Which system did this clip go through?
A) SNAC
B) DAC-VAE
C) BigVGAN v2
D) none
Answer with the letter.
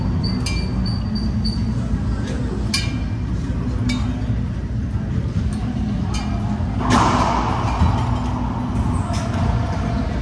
D